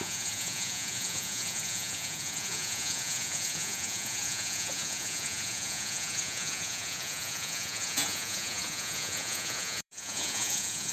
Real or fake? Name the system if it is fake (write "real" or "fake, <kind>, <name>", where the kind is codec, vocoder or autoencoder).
fake, vocoder, Vocos